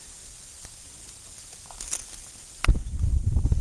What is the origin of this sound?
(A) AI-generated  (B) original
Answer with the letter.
B